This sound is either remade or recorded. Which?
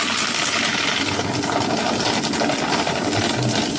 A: recorded